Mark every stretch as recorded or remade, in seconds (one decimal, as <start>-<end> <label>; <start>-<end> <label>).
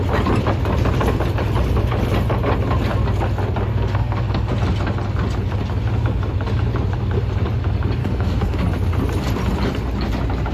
0.0-3.7 recorded; 3.7-4.5 remade; 4.5-8.0 recorded; 8.0-8.6 remade; 8.6-10.5 recorded